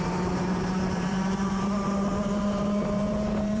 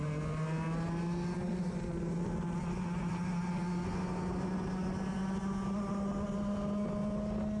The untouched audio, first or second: second